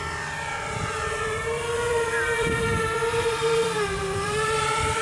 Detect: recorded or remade remade